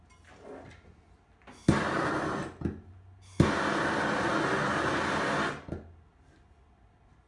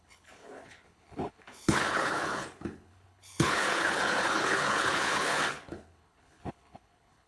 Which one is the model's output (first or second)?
second